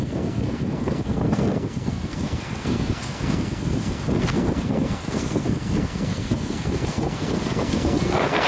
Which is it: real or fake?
fake